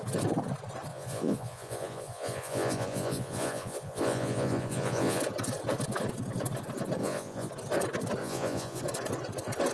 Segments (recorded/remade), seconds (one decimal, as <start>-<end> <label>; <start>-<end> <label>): 0.0-0.9 recorded; 0.9-5.2 remade; 5.2-7.0 recorded; 7.0-7.5 remade; 7.5-8.2 recorded; 8.2-8.8 remade; 8.8-9.7 recorded